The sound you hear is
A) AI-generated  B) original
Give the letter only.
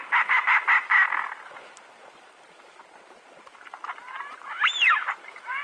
B